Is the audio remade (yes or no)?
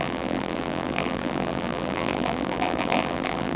yes